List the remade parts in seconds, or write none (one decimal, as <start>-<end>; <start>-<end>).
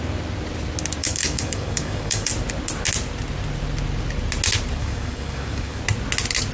1.0-2.3; 4.8-5.8